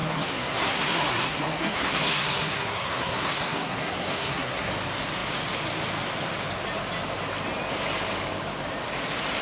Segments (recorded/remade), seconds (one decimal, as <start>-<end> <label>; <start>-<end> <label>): 0.0-4.7 remade; 4.7-9.4 recorded